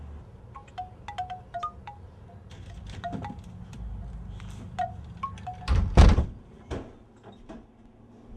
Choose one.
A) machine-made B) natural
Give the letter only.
B